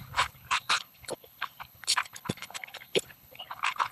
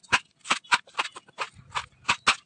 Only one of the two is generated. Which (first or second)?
first